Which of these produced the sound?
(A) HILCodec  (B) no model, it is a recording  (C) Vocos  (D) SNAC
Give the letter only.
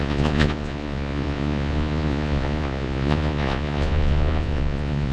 C